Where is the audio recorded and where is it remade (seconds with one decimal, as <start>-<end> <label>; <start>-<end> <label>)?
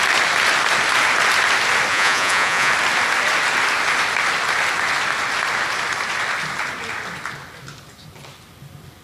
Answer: 0.0-1.9 recorded; 1.9-2.7 remade; 2.7-9.0 recorded